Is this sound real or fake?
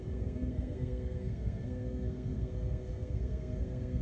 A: fake